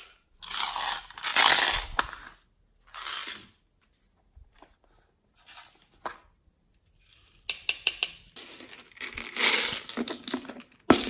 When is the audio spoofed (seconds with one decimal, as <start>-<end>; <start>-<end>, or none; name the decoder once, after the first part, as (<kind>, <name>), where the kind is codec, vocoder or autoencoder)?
none